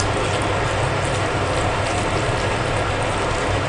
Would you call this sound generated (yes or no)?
no